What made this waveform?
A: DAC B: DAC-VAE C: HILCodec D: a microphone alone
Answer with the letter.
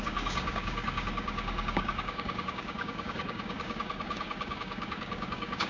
A